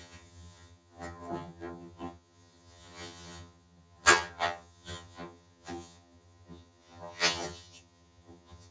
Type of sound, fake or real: fake